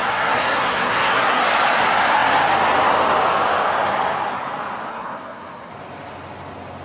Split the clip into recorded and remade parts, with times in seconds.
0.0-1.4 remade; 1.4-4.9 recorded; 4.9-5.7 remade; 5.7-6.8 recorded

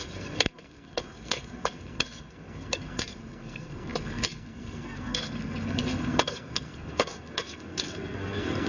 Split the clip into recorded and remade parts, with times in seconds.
0.0-8.7 remade

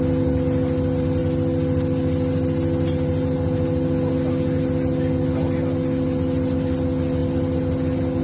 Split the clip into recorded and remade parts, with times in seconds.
0.0-8.2 recorded